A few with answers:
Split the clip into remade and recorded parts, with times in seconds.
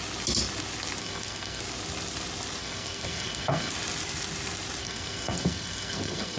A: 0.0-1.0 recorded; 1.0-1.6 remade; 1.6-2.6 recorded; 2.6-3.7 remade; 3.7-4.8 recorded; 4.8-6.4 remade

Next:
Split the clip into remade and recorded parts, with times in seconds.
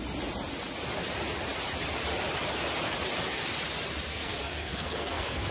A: 0.0-4.1 recorded; 4.1-5.5 remade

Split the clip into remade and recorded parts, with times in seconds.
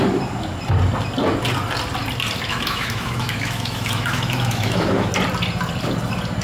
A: 0.0-2.5 recorded; 2.5-5.1 remade; 5.1-6.4 recorded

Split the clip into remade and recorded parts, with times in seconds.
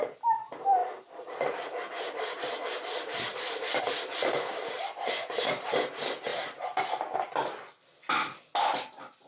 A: 0.0-0.8 recorded; 0.8-3.8 remade; 3.8-6.3 recorded; 6.3-6.8 remade; 6.8-9.3 recorded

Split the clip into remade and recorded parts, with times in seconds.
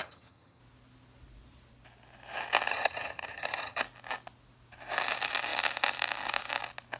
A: 0.0-0.6 remade; 0.6-2.7 recorded; 2.7-3.8 remade; 3.8-7.0 recorded